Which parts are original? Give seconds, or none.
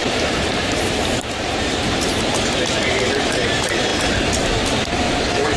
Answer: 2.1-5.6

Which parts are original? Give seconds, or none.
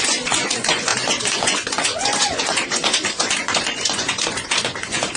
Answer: none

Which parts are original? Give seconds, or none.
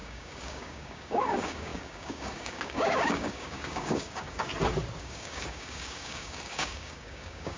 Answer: 4.5-5.0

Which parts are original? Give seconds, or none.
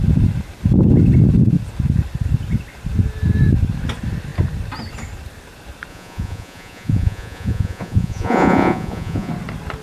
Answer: 0.0-5.9; 9.3-9.8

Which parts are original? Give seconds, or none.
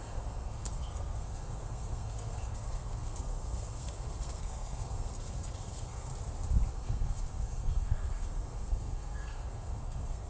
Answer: 6.1-6.7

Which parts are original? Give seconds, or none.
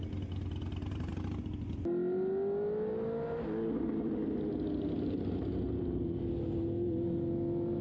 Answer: 0.0-7.8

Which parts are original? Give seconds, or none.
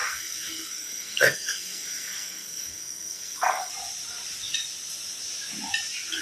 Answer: 3.7-6.2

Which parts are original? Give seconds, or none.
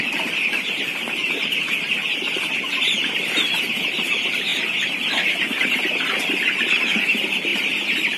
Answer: none